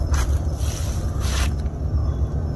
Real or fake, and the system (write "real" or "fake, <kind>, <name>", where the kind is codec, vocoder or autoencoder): real